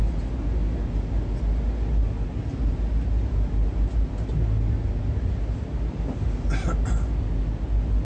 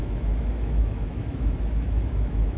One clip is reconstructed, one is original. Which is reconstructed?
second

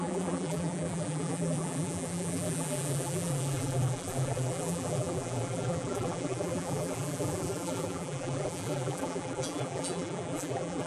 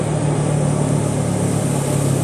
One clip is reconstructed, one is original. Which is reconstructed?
first